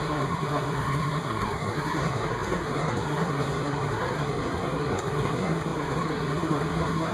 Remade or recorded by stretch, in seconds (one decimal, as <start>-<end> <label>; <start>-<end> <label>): 0.0-7.1 remade